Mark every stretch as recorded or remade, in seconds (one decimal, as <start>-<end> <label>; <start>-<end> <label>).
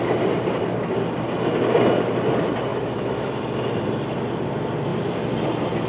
0.0-2.7 recorded; 2.7-3.4 remade; 3.4-5.9 recorded